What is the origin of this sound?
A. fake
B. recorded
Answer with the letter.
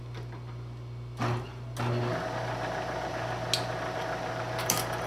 B